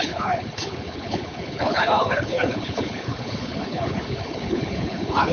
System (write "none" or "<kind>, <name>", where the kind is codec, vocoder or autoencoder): codec, HILCodec